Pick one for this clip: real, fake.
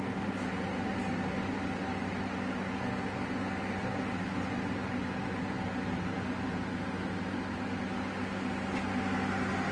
real